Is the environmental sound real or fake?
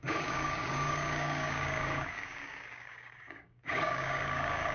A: fake